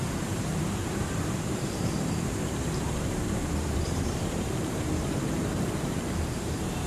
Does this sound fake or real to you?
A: fake